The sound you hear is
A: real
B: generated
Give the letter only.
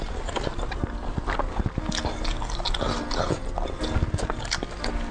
A